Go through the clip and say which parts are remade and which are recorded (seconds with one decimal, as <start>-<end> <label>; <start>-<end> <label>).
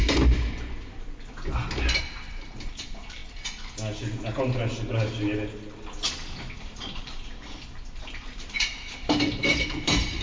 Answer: 0.0-2.0 recorded; 2.0-3.2 remade; 3.2-6.6 recorded; 6.6-10.2 remade